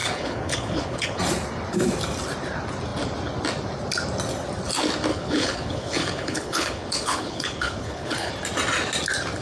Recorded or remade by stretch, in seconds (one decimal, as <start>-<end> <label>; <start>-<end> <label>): 0.0-1.2 remade; 1.2-5.1 recorded; 5.1-8.3 remade; 8.3-9.4 recorded